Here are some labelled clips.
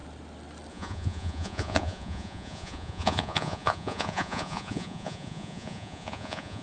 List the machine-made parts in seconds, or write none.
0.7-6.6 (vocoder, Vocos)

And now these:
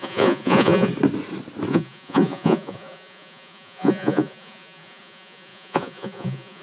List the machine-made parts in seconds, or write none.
0.0-0.9 (vocoder, Vocos); 1.7-6.6

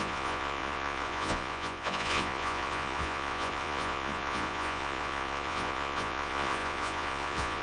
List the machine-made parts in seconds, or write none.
0.0-7.6 (vocoder, Vocos)